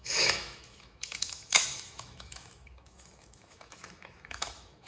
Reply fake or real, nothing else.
fake